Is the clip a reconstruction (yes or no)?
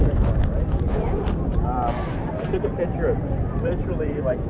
yes